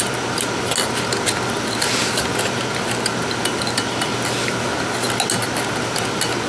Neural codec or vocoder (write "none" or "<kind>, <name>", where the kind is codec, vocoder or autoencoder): none